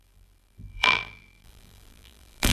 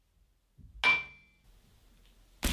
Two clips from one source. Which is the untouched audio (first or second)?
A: second